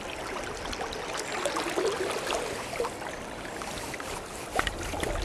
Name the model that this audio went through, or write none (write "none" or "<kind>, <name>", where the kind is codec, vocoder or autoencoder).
none